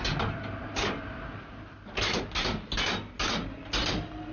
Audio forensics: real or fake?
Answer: real